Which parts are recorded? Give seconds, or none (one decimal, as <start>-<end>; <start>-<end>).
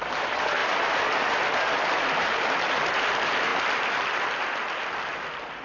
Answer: 0.0-5.6